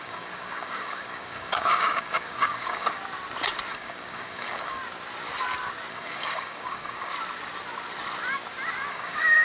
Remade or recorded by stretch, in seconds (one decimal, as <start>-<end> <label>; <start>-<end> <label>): 0.0-3.0 remade; 3.0-3.7 recorded; 3.7-4.8 remade; 4.8-5.9 recorded; 5.9-7.1 remade; 7.1-8.9 recorded; 8.9-9.4 remade